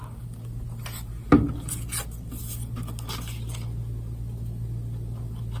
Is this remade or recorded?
recorded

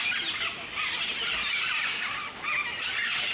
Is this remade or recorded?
recorded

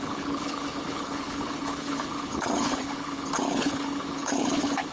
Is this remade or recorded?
remade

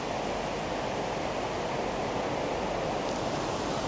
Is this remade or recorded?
recorded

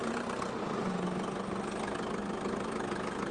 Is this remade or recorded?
recorded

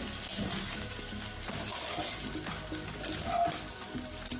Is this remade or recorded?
recorded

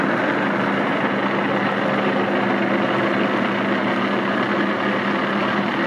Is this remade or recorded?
recorded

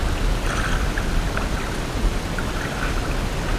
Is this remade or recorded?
recorded